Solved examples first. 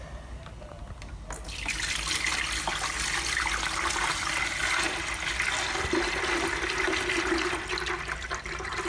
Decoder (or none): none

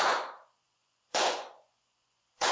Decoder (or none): vocoder, Vocos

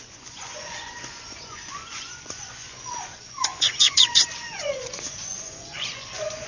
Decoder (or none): vocoder, Vocos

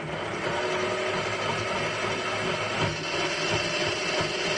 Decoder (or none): none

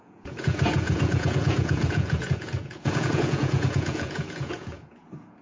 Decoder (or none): vocoder, Vocos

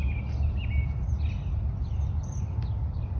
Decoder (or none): none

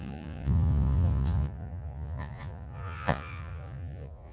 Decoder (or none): vocoder, Vocos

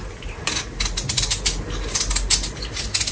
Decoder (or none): none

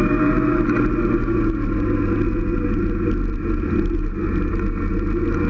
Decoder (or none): none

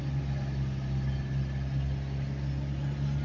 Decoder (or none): none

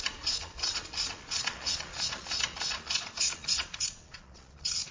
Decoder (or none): vocoder, Vocos